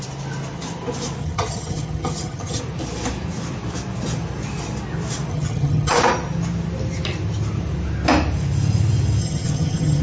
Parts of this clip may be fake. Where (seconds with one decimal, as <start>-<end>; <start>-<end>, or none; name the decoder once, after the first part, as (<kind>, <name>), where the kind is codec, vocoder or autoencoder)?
1.2-2.6 (vocoder, HiFi-GAN); 5.3-6.0; 9.2-10.0